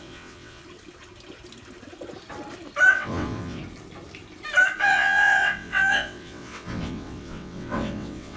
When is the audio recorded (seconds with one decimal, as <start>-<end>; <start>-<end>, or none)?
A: 0.6-2.9; 3.6-4.8